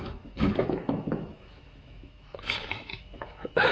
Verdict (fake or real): fake